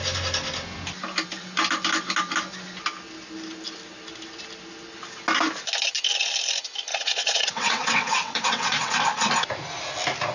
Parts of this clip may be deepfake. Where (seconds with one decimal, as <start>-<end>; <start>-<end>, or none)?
6.9-8.9

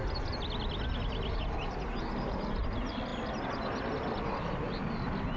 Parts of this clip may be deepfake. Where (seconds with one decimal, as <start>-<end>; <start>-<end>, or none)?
none

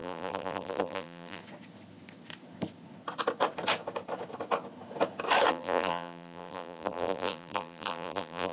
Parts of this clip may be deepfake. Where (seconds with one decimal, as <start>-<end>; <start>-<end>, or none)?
0.0-1.4; 5.5-8.5

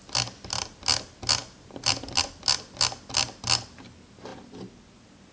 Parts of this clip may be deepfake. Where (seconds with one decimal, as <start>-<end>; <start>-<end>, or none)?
none

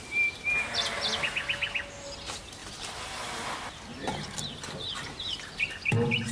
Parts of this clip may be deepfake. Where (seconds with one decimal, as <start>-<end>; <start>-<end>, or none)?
2.6-3.1

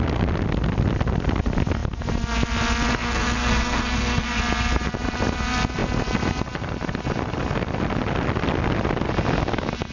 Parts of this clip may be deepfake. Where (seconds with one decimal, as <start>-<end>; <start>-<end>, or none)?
2.9-4.4

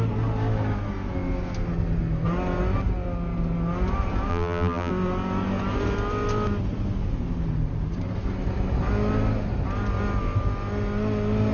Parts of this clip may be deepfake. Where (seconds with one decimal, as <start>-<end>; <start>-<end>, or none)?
4.3-4.9

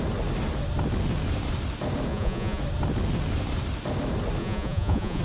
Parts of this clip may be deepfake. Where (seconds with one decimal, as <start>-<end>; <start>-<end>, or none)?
2.1-2.6; 4.4-5.2